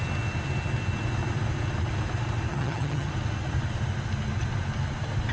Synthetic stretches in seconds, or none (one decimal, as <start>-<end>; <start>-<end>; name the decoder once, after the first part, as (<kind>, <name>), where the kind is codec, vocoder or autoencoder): 2.5-3.1 (vocoder, HiFi-GAN)